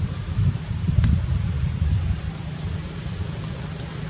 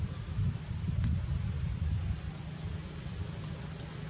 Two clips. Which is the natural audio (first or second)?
second